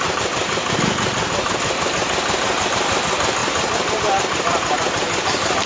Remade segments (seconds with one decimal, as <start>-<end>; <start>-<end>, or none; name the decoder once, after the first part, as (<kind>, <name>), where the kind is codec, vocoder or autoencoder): 0.0-0.6 (vocoder, BigVGAN v2); 2.7-3.4; 3.9-5.7